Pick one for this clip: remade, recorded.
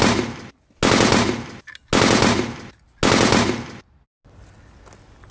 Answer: recorded